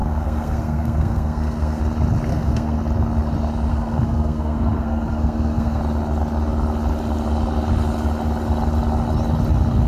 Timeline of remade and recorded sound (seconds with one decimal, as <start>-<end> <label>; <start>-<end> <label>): 0.0-1.8 remade; 1.8-2.3 recorded; 2.3-2.8 remade; 2.8-3.7 recorded; 3.7-5.8 remade; 5.8-9.9 recorded

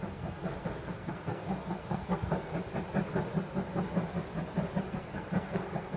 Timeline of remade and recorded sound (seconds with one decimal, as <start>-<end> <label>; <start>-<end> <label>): 0.0-2.5 remade; 2.5-4.8 recorded; 4.8-6.0 remade

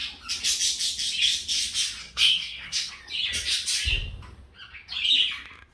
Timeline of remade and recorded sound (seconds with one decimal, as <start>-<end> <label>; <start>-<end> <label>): 0.0-2.0 recorded; 2.0-2.9 remade; 2.9-5.7 recorded

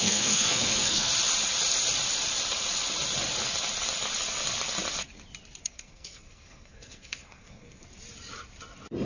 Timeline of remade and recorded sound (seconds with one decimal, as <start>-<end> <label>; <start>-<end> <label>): 0.0-1.1 remade; 1.1-5.6 recorded; 5.6-7.9 remade; 7.9-9.1 recorded

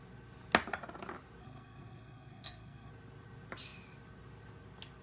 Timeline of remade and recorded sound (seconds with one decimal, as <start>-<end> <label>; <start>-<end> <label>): 0.0-1.4 recorded; 1.4-2.9 remade; 2.9-5.0 recorded

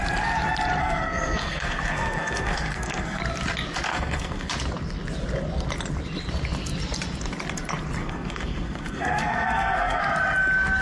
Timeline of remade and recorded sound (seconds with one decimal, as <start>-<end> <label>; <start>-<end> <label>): 0.0-0.8 recorded; 0.8-3.2 remade; 3.2-3.9 recorded; 3.9-4.5 remade; 4.5-8.0 recorded; 8.0-10.0 remade; 10.0-10.8 recorded